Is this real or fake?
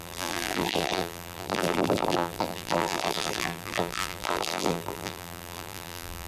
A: fake